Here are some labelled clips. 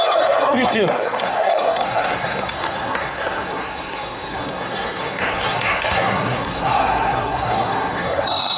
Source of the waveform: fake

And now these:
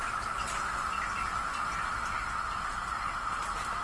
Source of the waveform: real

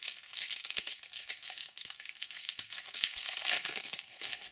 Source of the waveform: fake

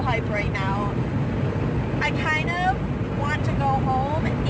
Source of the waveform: real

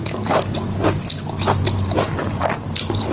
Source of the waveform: real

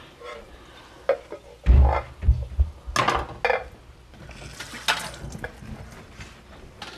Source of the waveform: real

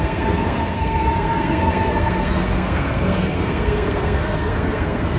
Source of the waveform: fake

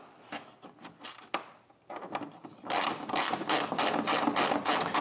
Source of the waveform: real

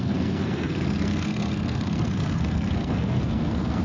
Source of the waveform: fake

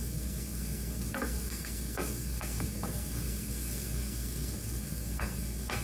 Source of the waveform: fake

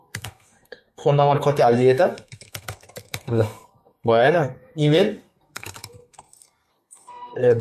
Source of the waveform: fake